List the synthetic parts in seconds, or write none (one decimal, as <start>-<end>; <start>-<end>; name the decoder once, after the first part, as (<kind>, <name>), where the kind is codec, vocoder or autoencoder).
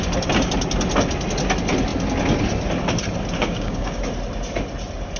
3.4-4.0 (codec, DAC)